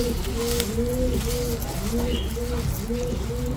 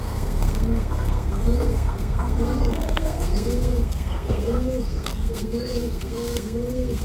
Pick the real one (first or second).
first